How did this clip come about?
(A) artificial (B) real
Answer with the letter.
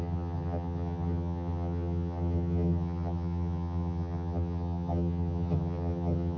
A